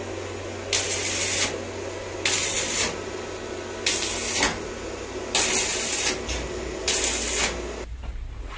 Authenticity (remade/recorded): recorded